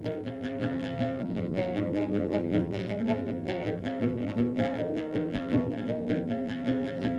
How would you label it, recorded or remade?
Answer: remade